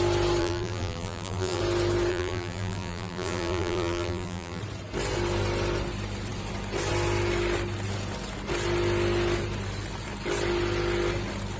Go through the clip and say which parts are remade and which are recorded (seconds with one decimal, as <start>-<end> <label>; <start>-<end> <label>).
0.0-0.4 recorded; 0.4-1.6 remade; 1.6-2.1 recorded; 2.1-4.6 remade; 4.6-11.6 recorded